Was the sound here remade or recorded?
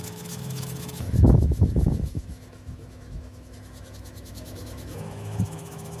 remade